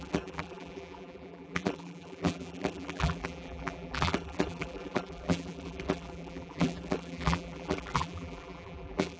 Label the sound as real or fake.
fake